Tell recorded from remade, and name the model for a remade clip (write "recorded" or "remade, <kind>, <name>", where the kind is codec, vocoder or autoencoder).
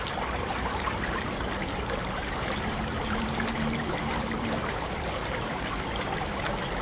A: remade, vocoder, BigVGAN v2